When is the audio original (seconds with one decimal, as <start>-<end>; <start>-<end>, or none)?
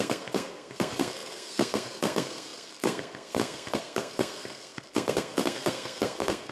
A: none